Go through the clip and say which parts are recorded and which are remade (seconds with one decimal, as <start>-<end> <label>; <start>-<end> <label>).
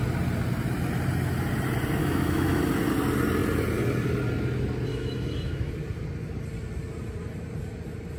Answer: 0.0-2.0 recorded; 2.0-2.6 remade; 2.6-4.9 recorded; 4.9-5.7 remade; 5.7-8.2 recorded